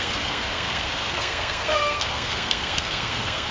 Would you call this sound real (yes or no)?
no